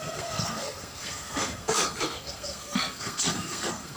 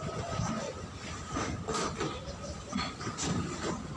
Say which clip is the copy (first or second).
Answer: first